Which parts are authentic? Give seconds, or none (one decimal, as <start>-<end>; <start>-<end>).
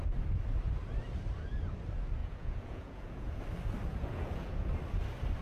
0.0-2.2; 3.4-3.9; 4.7-5.4